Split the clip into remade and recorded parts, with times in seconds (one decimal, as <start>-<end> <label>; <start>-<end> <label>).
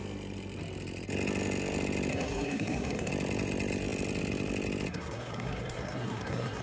0.0-2.1 recorded; 2.1-3.1 remade; 3.1-4.9 recorded; 4.9-6.6 remade